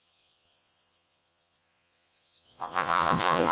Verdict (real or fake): fake